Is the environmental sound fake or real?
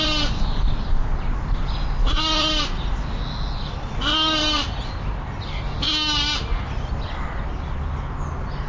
real